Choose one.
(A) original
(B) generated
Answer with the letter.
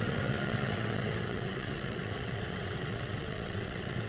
B